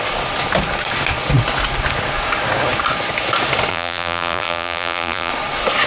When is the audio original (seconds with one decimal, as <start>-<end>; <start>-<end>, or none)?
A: 0.0-3.7; 5.3-5.9